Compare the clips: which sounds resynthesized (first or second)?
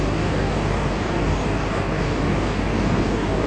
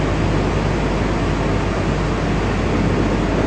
first